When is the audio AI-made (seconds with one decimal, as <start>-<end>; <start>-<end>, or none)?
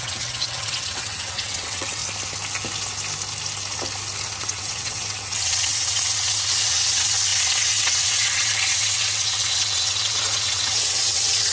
0.0-2.0; 4.4-11.5